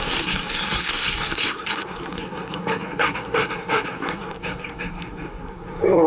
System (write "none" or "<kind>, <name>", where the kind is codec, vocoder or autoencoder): codec, SNAC